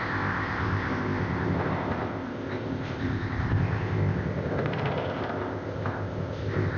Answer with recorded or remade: remade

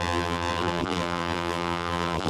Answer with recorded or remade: remade